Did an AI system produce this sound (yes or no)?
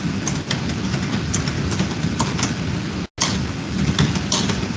no